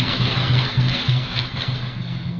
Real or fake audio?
fake